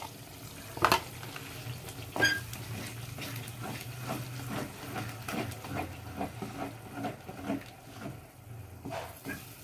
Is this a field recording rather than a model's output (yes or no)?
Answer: yes